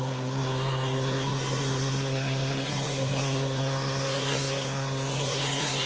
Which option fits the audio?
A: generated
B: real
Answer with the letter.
A